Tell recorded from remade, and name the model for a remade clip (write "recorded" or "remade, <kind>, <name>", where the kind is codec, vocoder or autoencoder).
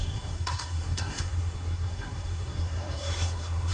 remade, codec, SNAC